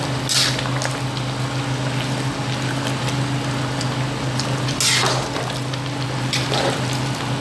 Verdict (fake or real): real